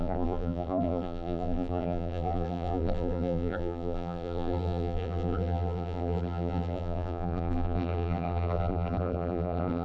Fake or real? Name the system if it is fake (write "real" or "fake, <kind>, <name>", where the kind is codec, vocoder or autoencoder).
fake, vocoder, BigVGAN v2